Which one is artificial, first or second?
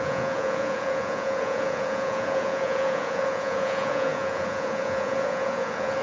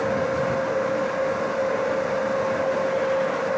first